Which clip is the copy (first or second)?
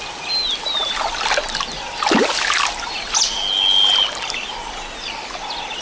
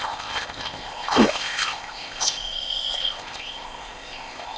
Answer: second